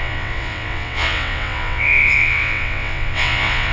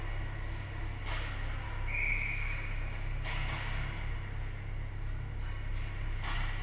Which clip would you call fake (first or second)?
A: first